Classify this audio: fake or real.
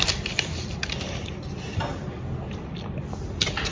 real